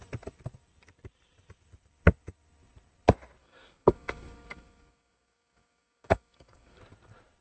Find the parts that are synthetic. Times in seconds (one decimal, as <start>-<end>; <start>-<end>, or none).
3.4-6.8